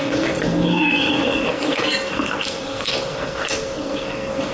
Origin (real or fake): fake